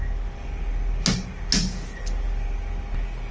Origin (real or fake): real